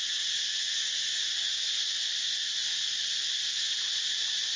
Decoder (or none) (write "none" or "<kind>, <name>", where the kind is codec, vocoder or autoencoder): none